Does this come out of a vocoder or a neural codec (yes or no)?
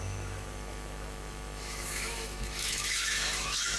yes